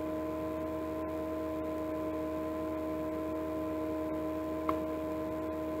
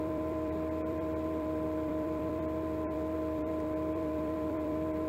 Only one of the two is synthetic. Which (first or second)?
second